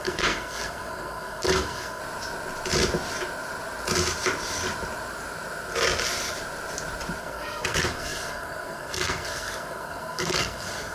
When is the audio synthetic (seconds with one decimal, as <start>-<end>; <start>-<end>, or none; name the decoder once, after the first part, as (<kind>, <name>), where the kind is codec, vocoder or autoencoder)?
0.0-2.0 (codec, SNAC); 7.2-10.9

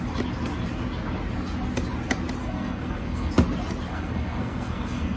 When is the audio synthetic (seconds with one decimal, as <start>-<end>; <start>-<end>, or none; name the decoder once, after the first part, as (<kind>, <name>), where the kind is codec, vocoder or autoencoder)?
2.4-3.3 (codec, SNAC); 3.9-5.2

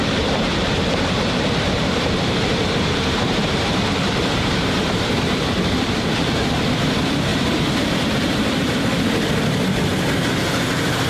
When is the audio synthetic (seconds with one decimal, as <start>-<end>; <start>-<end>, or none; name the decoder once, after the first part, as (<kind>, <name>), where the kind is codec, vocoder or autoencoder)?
0.0-3.6 (vocoder, BigVGAN v2); 4.2-6.6; 7.3-8.9